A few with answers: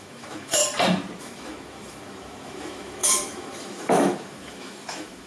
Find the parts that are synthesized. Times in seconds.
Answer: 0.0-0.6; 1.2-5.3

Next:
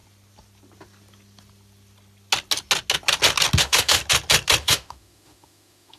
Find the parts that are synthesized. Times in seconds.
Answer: 3.6-4.0; 4.6-6.0

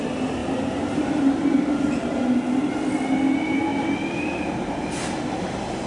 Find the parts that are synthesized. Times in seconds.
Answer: none

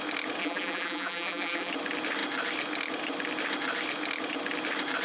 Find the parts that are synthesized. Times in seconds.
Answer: 0.4-1.7